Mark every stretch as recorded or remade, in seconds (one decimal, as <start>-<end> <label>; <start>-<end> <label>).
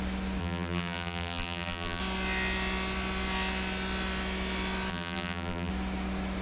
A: 0.0-0.4 recorded; 0.4-2.0 remade; 2.0-4.9 recorded; 4.9-5.7 remade; 5.7-6.4 recorded